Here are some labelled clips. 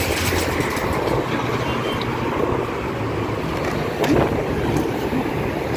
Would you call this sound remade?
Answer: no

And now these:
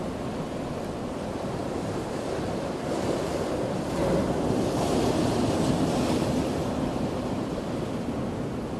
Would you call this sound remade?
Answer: no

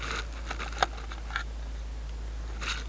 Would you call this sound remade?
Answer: no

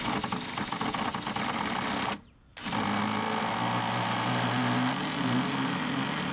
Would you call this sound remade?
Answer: no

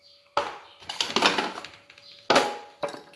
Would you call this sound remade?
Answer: no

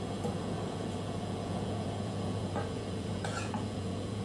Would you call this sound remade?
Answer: yes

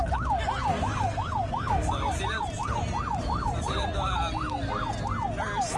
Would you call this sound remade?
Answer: no